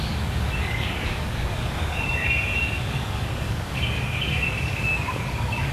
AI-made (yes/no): yes